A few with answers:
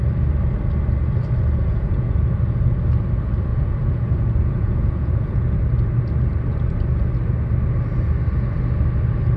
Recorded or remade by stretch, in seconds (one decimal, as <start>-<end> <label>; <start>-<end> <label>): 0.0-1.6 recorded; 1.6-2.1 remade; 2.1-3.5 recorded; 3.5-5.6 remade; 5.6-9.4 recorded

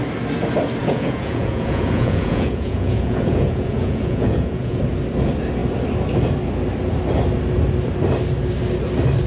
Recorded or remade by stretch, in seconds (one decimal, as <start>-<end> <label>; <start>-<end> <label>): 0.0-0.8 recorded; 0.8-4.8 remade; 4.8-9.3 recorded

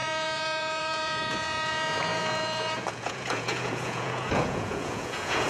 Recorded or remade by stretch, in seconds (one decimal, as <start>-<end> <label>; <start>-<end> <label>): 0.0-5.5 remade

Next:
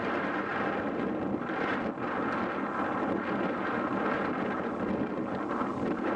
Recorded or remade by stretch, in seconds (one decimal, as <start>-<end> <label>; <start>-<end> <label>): 0.0-6.2 recorded

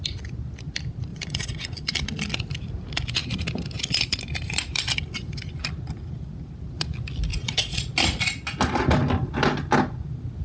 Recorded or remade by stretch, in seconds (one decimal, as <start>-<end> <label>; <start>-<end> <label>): 0.0-1.1 recorded; 1.1-1.9 remade; 1.9-7.3 recorded; 7.3-7.8 remade; 7.8-10.4 recorded

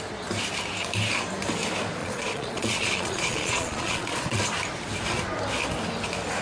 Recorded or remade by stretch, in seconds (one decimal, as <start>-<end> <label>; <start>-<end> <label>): 0.0-2.0 recorded; 2.0-4.4 remade; 4.4-6.4 recorded